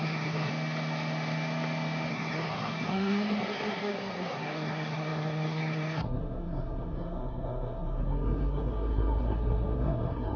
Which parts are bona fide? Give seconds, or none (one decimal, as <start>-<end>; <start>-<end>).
0.5-2.1